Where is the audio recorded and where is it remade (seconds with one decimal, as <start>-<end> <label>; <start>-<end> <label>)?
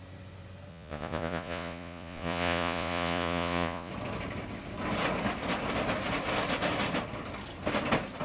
0.0-0.7 recorded; 0.7-3.9 remade; 3.9-8.2 recorded